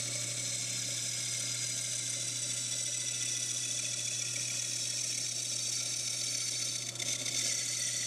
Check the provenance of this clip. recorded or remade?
recorded